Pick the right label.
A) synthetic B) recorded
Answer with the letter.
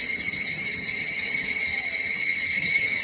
A